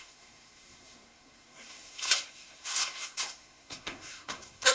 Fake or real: fake